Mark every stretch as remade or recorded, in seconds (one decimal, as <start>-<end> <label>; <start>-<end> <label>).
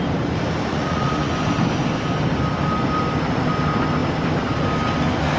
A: 0.0-0.7 recorded; 0.7-1.3 remade; 1.3-5.4 recorded